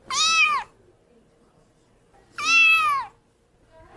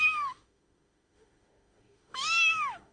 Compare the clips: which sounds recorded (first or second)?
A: first